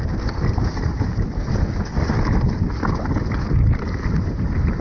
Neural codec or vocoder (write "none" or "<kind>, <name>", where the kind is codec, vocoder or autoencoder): none